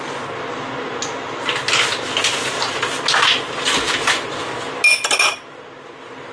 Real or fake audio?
real